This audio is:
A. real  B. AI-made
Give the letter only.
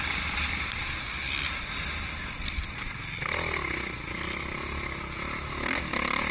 A